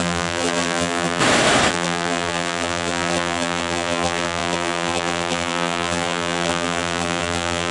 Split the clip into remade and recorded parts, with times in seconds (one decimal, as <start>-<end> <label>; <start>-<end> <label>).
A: 0.0-1.2 remade; 1.2-1.7 recorded; 1.7-7.7 remade